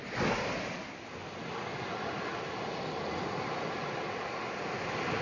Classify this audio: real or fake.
real